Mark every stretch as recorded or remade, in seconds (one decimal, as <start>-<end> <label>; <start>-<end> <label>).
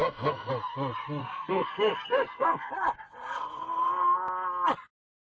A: 0.0-0.5 remade; 0.5-1.2 recorded; 1.2-2.7 remade; 2.7-5.3 recorded